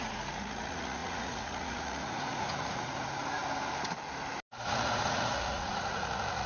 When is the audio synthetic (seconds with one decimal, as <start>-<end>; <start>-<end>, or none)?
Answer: 0.0-3.4; 4.6-6.5